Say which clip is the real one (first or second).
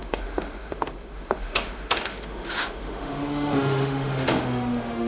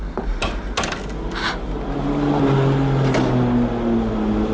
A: second